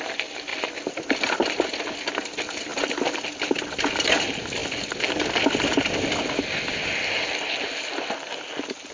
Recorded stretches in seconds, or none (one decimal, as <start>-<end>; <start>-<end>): 0.0-8.9